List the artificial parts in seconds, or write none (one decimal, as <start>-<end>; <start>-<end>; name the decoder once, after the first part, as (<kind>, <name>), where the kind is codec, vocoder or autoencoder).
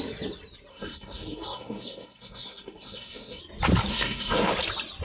0.7-3.4 (codec, SNAC); 3.9-4.5